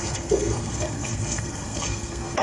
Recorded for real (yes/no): no